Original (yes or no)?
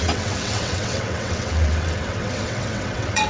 no